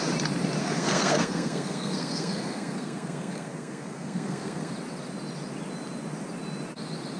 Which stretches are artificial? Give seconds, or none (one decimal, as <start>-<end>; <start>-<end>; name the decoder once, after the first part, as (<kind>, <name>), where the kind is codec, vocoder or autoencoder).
0.6-4.7 (codec, SNAC)